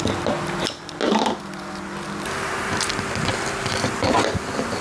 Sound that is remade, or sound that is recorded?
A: recorded